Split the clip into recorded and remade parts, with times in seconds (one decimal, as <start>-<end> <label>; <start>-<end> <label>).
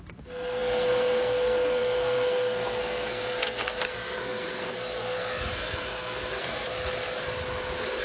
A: 0.0-6.7 remade; 6.7-8.0 recorded